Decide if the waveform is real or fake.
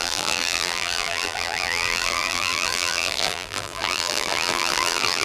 fake